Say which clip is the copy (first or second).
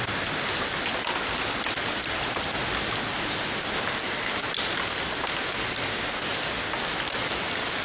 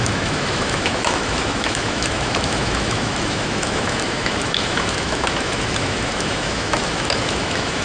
second